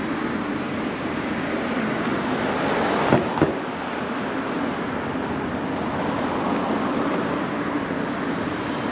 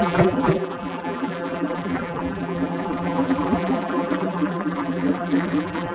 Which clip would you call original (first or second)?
first